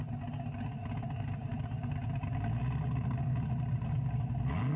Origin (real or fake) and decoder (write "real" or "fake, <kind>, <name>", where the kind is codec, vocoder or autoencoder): real